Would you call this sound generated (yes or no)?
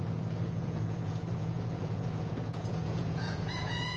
yes